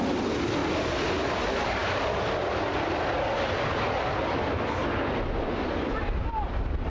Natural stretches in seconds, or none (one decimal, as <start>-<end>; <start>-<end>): 0.0-6.9